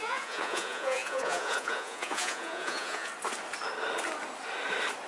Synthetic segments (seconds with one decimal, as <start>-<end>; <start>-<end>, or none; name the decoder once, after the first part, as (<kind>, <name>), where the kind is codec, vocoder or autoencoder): 0.0-3.1 (vocoder, Vocos)

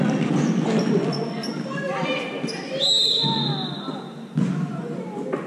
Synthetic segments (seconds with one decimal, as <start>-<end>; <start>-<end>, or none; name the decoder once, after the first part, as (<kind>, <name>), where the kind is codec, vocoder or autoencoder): none

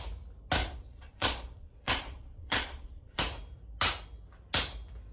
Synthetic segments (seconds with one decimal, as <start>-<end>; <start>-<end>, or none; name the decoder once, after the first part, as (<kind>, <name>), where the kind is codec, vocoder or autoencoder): 0.6-3.2 (vocoder, Vocos)

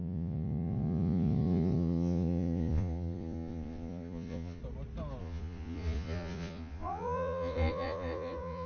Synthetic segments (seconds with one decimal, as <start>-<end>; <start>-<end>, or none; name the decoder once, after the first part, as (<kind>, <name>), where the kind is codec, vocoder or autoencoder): 0.0-4.6 (vocoder, Vocos); 5.2-8.7

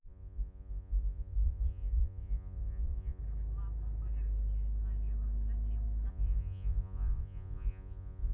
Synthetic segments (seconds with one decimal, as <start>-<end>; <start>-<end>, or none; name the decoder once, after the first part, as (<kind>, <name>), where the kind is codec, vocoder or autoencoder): 0.0-3.2 (vocoder, Vocos); 6.1-8.3

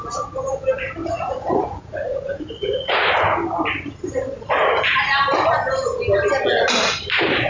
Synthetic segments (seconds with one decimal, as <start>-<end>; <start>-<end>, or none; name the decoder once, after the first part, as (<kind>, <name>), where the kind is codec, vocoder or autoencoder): 1.0-3.1 (vocoder, Vocos)